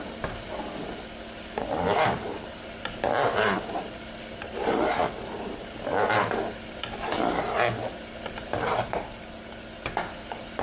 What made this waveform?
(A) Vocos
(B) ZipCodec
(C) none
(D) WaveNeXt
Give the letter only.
C